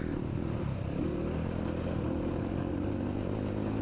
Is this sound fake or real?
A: real